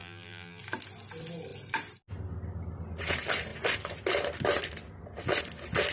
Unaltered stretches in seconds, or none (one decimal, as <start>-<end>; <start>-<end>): 0.6-5.9